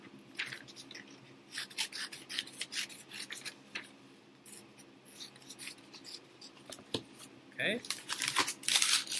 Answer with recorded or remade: recorded